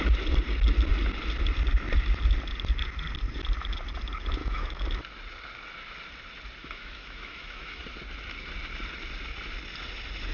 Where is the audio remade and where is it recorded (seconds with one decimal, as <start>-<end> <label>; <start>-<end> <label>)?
0.0-4.4 recorded; 4.4-5.0 remade; 5.0-6.6 recorded; 6.6-7.8 remade; 7.8-10.3 recorded